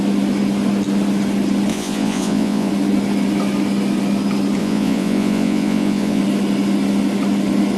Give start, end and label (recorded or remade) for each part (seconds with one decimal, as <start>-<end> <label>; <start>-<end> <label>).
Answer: 0.0-1.7 recorded; 1.7-2.7 remade; 2.7-4.6 recorded; 4.6-6.2 remade; 6.2-7.8 recorded